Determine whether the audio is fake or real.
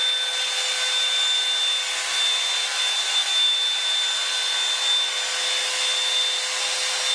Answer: real